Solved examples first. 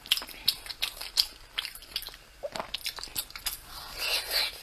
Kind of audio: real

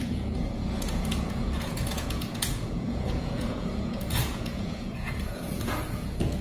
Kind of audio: fake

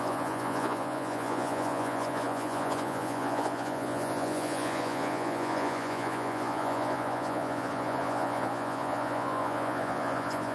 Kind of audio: fake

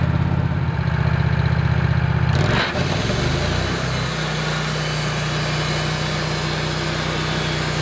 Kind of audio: real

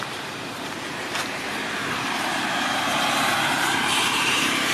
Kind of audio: fake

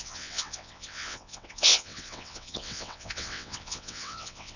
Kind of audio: fake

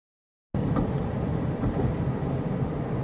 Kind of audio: real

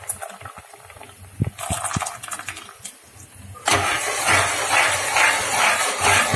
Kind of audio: real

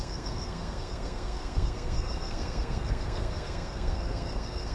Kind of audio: fake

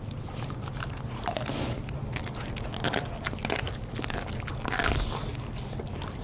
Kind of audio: real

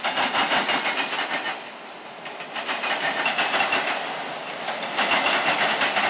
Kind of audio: real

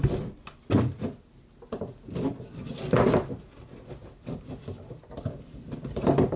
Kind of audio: real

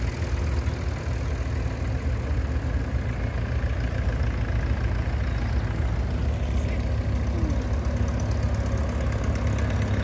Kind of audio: real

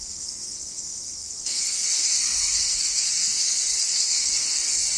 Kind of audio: fake